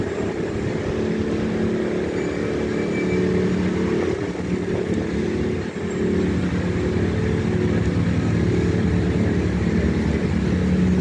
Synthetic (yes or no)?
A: no